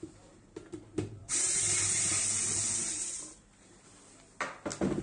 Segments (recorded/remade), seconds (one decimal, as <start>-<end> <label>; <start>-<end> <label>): 0.0-1.2 recorded; 1.2-2.2 remade; 2.2-2.8 recorded; 2.8-3.7 remade; 3.7-5.0 recorded